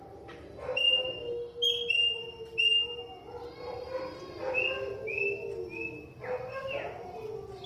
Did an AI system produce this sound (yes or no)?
no